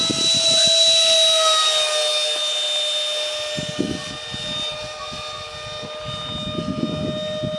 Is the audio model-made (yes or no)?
no